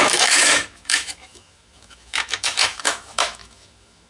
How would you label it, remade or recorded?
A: remade